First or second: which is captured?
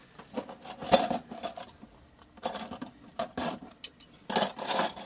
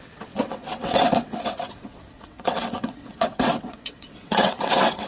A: first